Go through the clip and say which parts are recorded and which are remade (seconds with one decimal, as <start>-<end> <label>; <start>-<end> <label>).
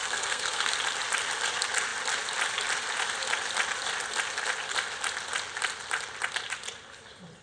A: 0.0-0.7 remade; 0.7-7.4 recorded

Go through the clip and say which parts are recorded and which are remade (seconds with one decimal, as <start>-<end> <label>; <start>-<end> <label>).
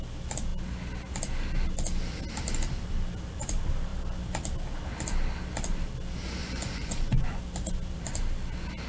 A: 0.0-6.4 recorded; 6.4-7.4 remade; 7.4-8.9 recorded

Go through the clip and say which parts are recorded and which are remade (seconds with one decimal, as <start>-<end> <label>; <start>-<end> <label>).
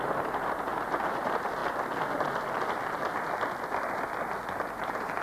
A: 0.0-1.6 remade; 1.6-4.7 recorded; 4.7-5.2 remade